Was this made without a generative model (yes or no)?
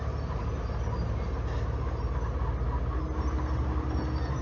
yes